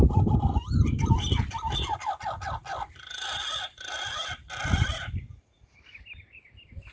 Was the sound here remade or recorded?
recorded